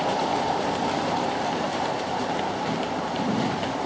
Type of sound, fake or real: fake